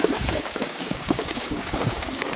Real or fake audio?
fake